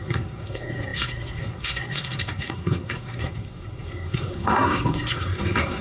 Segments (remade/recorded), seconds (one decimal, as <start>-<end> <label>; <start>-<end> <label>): 0.0-5.8 remade